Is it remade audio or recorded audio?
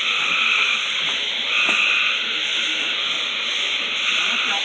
recorded